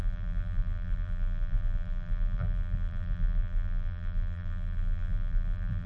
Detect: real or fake fake